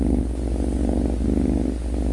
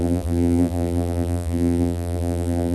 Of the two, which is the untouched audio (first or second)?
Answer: first